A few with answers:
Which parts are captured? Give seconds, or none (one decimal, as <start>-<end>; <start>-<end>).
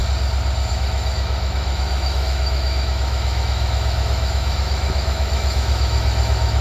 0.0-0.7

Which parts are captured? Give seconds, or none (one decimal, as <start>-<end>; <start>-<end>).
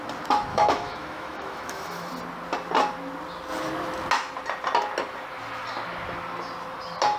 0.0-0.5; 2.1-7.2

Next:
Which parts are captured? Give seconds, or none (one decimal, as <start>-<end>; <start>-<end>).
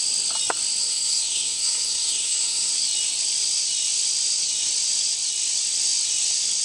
0.0-0.8; 2.7-6.6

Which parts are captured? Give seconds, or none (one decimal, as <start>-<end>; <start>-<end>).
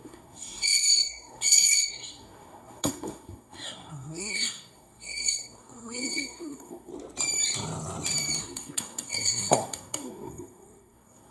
6.9-8.4